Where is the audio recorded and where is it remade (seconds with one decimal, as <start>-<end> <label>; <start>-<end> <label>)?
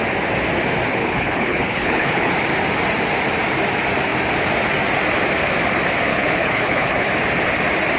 0.0-1.0 recorded; 1.0-2.3 remade; 2.3-6.1 recorded; 6.1-7.1 remade; 7.1-8.0 recorded